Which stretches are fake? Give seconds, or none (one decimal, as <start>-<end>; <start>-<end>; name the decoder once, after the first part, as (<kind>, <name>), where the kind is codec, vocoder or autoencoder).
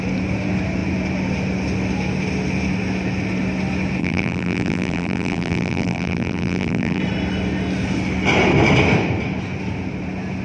4.0-7.0 (vocoder, BigVGAN v2)